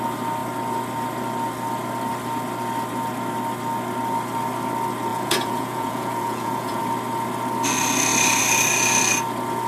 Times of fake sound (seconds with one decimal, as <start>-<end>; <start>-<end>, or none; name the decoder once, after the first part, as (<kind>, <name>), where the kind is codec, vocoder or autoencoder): 5.1-6.8 (vocoder, Vocos)